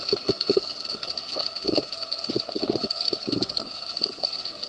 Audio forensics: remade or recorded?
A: remade